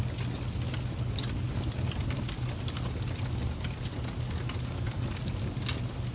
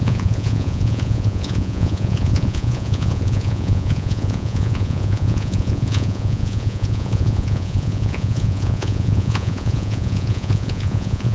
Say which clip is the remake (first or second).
second